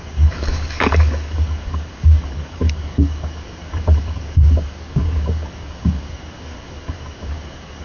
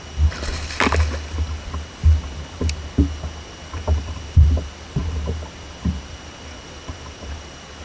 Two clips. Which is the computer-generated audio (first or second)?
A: first